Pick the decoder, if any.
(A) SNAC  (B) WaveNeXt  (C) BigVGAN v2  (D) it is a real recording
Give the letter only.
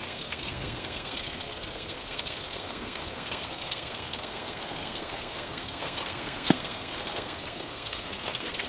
A